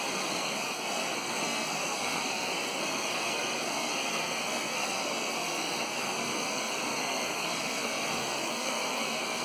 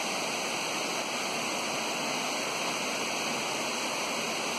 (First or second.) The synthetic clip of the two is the first